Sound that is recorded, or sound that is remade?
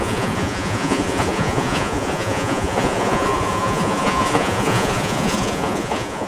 remade